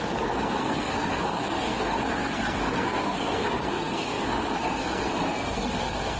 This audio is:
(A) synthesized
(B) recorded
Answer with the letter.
A